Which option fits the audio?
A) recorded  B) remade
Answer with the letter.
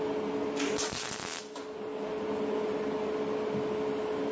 A